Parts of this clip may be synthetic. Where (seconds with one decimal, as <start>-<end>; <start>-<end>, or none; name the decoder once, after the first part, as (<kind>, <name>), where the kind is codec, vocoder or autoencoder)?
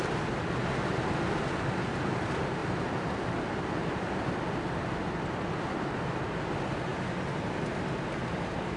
none